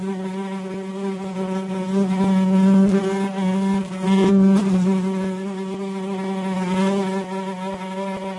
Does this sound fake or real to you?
real